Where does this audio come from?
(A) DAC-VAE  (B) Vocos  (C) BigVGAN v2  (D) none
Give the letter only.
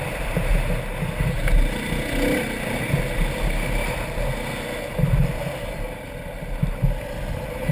D